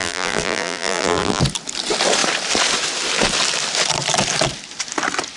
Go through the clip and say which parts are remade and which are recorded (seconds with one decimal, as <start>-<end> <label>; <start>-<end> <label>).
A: 0.0-1.4 remade; 1.4-5.4 recorded